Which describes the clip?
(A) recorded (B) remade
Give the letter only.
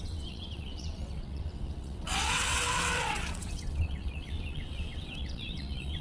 B